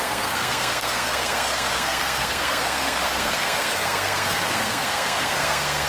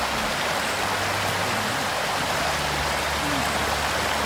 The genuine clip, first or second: second